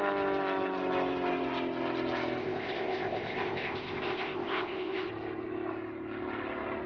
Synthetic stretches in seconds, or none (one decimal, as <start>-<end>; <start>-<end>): 2.4-5.1